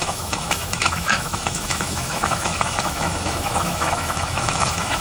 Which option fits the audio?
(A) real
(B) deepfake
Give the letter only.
B